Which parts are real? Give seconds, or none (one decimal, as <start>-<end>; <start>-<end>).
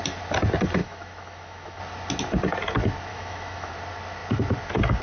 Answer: 0.0-0.8; 1.8-3.1; 3.7-5.0